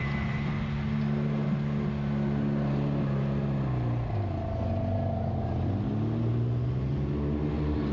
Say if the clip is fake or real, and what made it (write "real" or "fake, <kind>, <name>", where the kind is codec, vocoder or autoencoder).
real